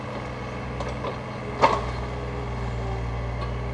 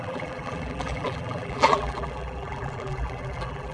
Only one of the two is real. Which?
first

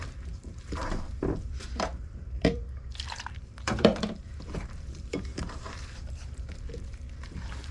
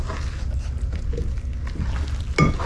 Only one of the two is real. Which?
second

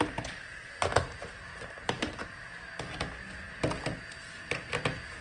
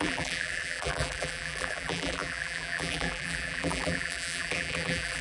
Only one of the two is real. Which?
first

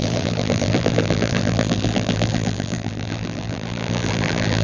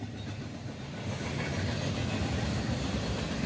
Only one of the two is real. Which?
second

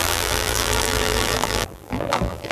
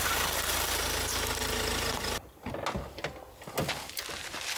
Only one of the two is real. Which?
second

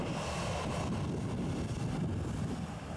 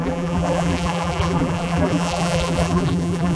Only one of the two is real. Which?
first